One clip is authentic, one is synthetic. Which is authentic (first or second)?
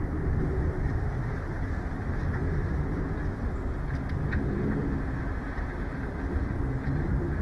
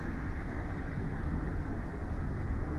first